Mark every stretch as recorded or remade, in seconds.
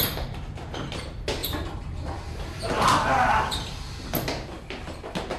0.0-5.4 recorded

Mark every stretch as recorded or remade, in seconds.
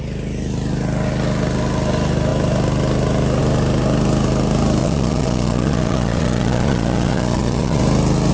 0.0-4.8 recorded; 4.8-7.8 remade; 7.8-8.3 recorded